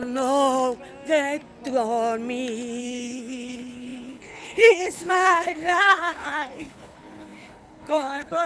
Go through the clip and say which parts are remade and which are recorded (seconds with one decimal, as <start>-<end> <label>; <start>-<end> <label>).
0.0-2.8 recorded; 2.8-8.5 remade